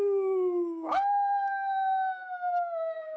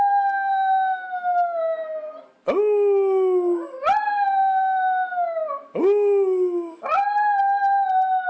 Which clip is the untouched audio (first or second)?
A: second